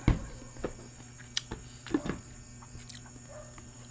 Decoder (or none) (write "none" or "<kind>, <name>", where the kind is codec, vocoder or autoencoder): none